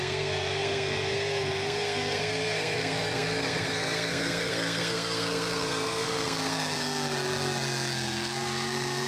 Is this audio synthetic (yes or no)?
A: yes